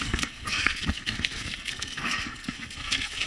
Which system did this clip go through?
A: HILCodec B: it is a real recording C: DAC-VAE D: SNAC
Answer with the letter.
D